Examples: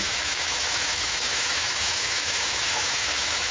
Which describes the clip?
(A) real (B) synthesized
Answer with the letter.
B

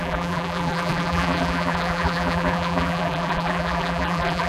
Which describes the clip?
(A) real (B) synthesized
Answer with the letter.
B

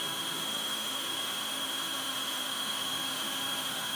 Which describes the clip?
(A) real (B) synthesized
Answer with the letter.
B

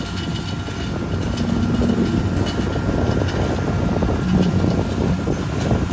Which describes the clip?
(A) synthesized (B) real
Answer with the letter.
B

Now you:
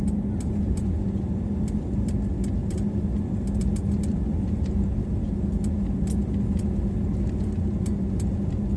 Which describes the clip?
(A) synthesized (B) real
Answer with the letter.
B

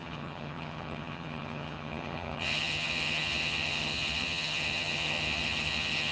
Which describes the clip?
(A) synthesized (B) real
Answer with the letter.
A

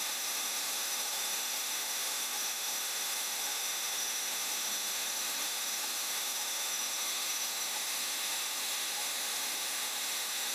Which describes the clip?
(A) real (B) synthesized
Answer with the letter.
B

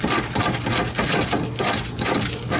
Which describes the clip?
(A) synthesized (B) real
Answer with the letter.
B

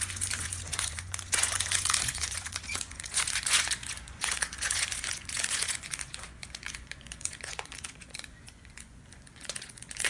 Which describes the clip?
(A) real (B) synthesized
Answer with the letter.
B